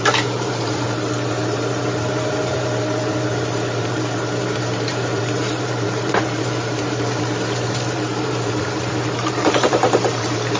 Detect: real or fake fake